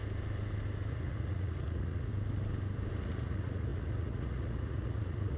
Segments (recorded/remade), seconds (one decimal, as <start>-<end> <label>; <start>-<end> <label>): 0.0-0.9 recorded; 0.9-2.1 remade; 2.1-3.0 recorded; 3.0-5.4 remade